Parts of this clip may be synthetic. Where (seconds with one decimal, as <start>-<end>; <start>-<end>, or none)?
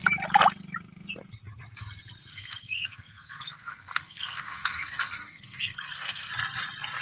2.3-6.3